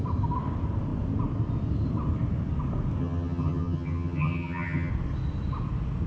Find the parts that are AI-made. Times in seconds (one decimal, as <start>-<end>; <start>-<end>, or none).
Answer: 3.0-4.9

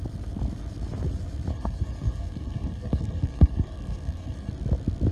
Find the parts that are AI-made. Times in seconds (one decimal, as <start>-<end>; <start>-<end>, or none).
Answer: 1.5-4.5

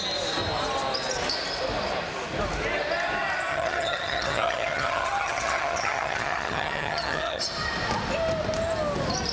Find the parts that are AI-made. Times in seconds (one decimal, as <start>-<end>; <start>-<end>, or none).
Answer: 3.5-7.4